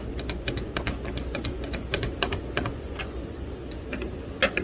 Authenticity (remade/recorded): remade